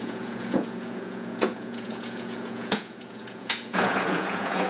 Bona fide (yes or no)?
no